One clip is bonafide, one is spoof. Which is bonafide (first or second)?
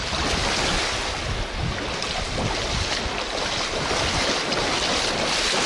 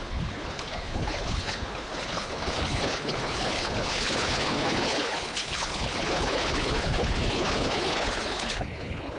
first